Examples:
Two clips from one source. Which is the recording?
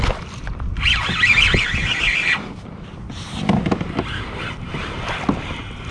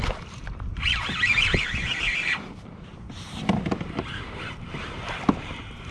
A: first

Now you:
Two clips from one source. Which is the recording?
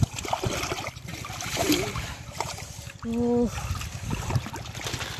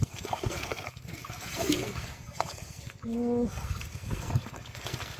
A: first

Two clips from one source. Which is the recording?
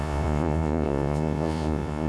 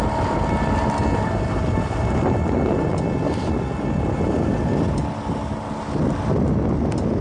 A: second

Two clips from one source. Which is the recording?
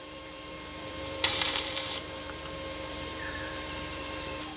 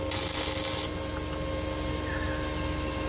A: second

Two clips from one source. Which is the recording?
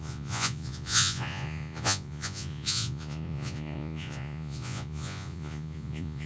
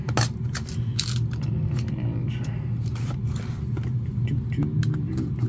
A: second